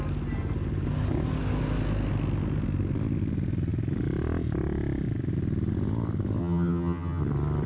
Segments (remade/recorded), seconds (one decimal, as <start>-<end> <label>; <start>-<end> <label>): 0.0-6.4 recorded; 6.4-7.2 remade; 7.2-7.7 recorded